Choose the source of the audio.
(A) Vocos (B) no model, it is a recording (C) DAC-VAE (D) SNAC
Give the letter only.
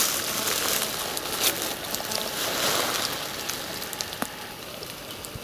B